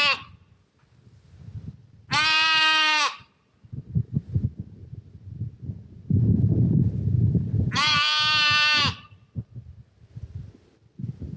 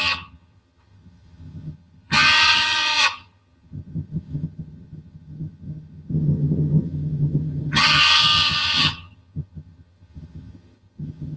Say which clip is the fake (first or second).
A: second